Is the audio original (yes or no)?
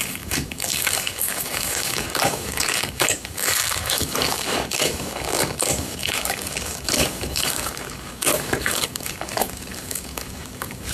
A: no